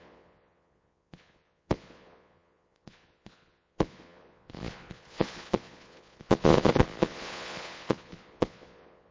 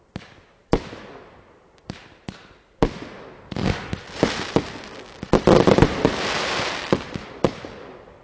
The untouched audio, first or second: second